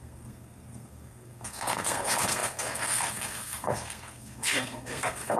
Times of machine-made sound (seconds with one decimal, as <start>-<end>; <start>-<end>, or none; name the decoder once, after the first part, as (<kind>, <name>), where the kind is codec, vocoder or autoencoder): 0.0-5.4 (codec, SNAC)